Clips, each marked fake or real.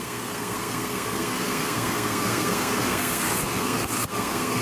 fake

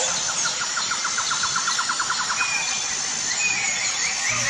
real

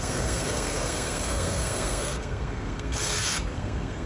fake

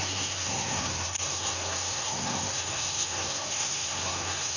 fake